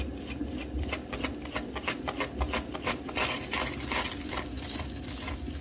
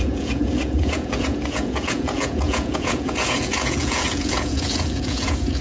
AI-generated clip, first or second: second